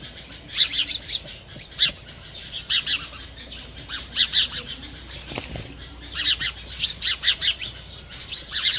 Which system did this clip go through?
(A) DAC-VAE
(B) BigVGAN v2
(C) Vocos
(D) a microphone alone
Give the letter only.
B